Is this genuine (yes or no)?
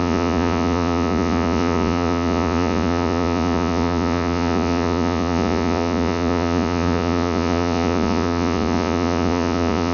no